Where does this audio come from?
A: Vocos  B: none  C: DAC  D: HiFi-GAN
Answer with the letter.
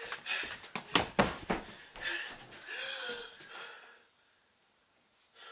B